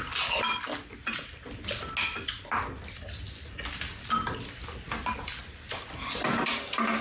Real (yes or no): yes